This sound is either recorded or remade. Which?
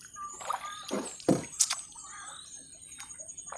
recorded